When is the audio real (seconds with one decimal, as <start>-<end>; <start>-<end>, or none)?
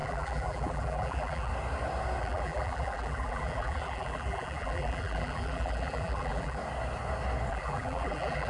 1.5-2.2; 6.6-7.5